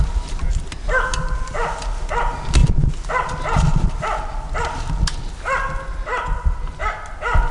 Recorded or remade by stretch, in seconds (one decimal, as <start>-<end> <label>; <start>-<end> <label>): 0.0-6.1 recorded; 6.1-6.6 remade; 6.6-7.5 recorded